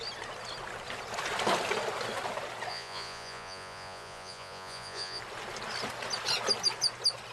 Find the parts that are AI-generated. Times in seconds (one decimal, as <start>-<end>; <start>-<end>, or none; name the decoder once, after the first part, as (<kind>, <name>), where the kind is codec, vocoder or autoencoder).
2.7-5.2 (vocoder, Vocos)